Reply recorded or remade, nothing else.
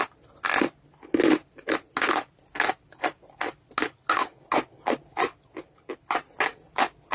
recorded